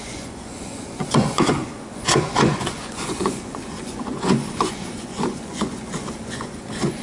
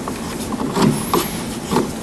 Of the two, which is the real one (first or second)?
second